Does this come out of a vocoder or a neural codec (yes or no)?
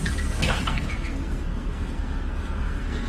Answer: yes